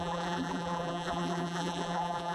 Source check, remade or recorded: remade